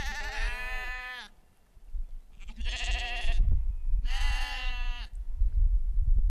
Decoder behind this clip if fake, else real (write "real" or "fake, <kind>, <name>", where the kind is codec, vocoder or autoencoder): fake, vocoder, BigVGAN v2